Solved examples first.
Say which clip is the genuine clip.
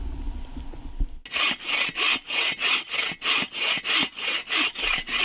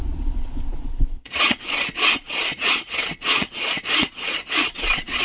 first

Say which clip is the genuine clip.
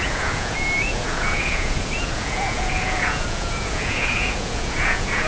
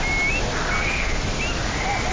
second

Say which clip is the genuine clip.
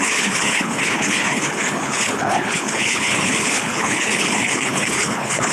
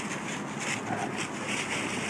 second